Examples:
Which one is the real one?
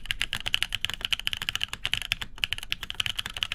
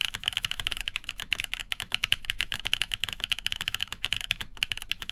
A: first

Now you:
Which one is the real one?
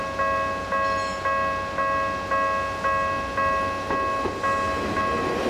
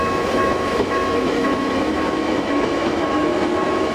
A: first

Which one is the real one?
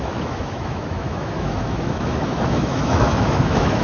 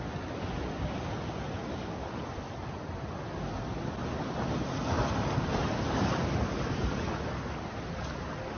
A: second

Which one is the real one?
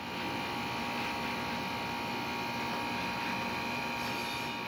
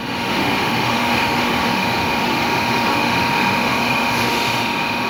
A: first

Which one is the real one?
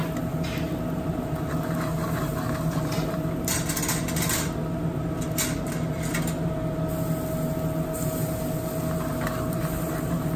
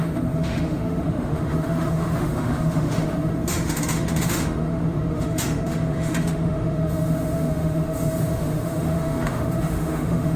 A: first